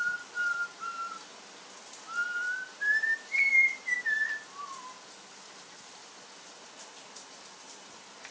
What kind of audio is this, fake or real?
real